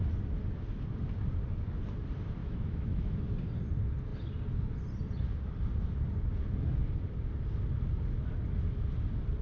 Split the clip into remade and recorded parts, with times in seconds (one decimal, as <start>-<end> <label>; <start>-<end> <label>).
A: 0.0-2.4 recorded; 2.4-3.2 remade; 3.2-9.4 recorded